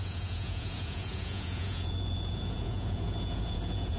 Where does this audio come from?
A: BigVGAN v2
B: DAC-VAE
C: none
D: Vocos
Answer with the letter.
D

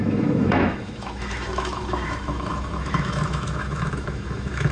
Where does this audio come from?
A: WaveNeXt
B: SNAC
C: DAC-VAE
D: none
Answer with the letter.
C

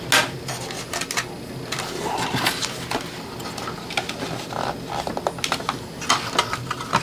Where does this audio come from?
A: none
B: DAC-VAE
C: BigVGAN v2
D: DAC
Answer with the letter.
A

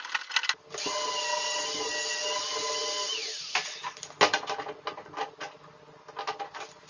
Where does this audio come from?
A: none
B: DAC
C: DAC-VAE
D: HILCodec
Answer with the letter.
A